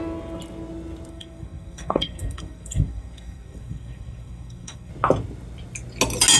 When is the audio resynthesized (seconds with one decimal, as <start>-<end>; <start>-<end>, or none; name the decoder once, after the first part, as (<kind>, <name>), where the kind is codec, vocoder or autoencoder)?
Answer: 1.1-4.9 (codec, SNAC)